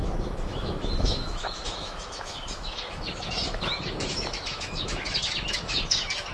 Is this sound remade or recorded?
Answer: remade